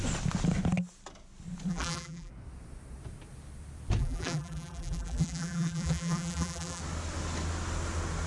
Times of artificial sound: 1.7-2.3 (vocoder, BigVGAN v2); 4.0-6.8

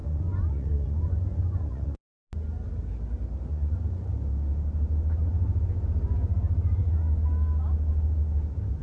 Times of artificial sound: 0.0-2.2 (vocoder, Vocos); 3.5-4.1

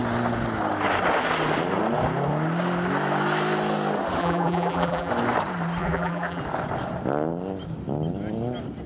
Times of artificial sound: 4.2-5.1 (vocoder, BigVGAN v2); 5.8-6.4

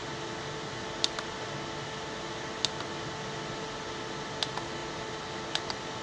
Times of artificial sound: none

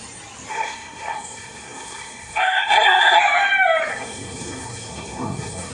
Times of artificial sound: 0.5-3.2 (codec, SNAC); 3.9-5.7